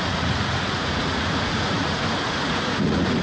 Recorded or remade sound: remade